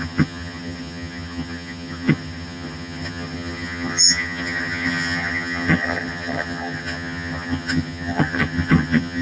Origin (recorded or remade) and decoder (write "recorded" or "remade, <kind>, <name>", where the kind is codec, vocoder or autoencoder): remade, vocoder, HiFi-GAN